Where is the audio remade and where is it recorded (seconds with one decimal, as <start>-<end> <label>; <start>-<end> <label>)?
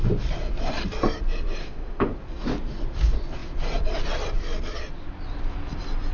0.0-1.6 recorded; 1.6-2.1 remade; 2.1-6.1 recorded